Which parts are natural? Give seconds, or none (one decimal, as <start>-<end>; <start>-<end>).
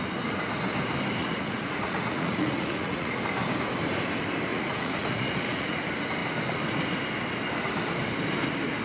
0.0-1.2; 3.2-4.5; 5.8-8.8